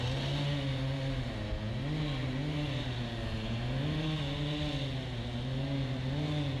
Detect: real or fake real